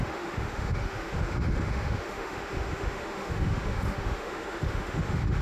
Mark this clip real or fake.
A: fake